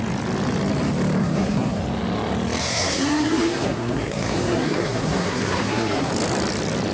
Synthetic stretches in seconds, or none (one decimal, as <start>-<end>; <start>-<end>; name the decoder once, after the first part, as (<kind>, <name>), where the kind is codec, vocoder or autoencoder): 1.2-1.8 (codec, SNAC); 2.6-6.1